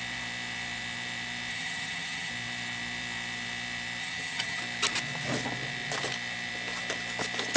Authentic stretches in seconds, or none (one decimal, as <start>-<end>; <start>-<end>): 0.0-1.5; 2.3-4.0; 4.6-7.6